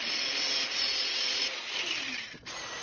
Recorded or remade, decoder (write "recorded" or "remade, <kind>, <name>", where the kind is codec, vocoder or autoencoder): recorded